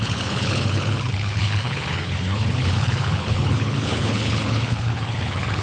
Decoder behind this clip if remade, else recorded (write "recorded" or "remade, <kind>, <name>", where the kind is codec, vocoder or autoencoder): remade, codec, HILCodec